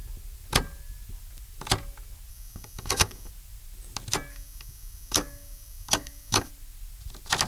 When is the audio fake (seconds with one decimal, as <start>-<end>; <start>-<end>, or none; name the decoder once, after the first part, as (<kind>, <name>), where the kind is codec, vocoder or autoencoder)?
2.3-3.3 (codec, DAC); 4.3-6.5